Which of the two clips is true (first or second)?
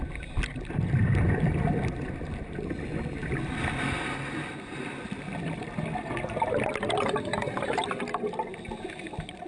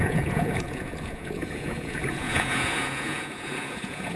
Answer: first